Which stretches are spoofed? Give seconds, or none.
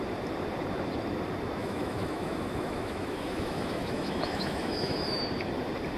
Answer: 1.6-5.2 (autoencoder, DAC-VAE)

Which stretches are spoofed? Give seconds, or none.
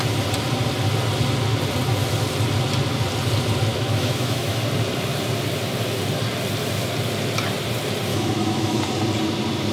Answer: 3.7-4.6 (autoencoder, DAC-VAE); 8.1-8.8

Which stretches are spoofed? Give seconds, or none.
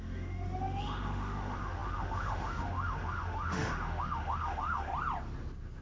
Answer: 0.0-4.9 (autoencoder, DAC-VAE)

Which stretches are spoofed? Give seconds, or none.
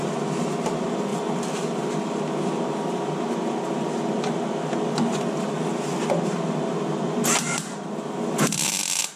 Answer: none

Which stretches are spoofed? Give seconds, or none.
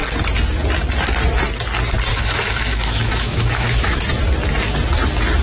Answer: 2.1-4.2 (autoencoder, DAC-VAE)